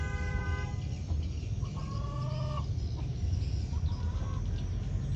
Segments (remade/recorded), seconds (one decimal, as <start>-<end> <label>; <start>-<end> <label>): 0.0-0.7 remade; 0.7-3.8 recorded; 3.8-4.2 remade; 4.2-5.2 recorded